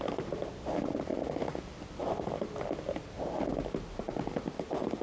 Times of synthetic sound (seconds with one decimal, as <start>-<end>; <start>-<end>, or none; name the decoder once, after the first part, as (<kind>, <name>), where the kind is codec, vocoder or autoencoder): none